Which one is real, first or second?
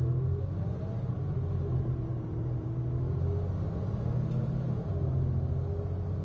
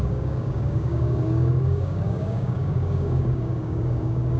first